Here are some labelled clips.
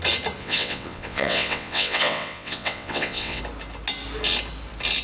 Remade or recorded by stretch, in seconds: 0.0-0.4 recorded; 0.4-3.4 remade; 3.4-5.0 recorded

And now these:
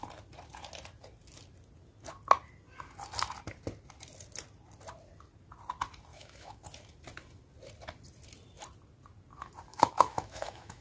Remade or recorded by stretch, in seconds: 0.0-6.1 recorded; 6.1-6.6 remade; 6.6-9.7 recorded; 9.7-10.8 remade

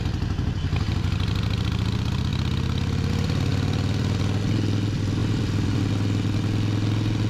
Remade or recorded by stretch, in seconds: 0.0-3.5 recorded; 3.5-4.2 remade; 4.2-5.2 recorded; 5.2-5.8 remade; 5.8-7.3 recorded

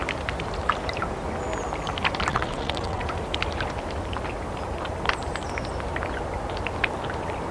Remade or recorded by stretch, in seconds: 0.0-2.3 recorded; 2.3-3.0 remade; 3.0-7.5 recorded

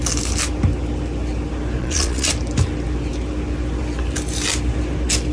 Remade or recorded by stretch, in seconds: 0.0-1.8 recorded; 1.8-2.3 remade; 2.3-5.3 recorded

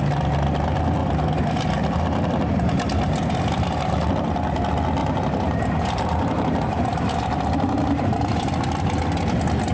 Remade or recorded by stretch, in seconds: 0.0-1.0 recorded; 1.0-4.1 remade; 4.1-5.0 recorded; 5.0-8.5 remade; 8.5-9.7 recorded

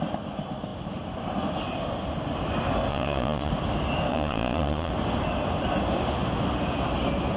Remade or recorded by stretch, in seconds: 0.0-2.9 recorded; 2.9-3.5 remade; 3.5-4.1 recorded; 4.1-4.9 remade; 4.9-7.4 recorded